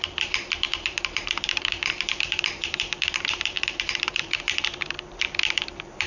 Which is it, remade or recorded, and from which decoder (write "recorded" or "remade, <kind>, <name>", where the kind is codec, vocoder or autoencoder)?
remade, vocoder, BigVGAN v2